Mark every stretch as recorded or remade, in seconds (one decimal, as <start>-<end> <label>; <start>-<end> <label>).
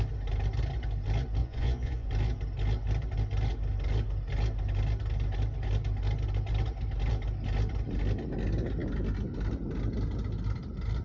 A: 0.0-1.4 recorded; 1.4-2.1 remade; 2.1-11.0 recorded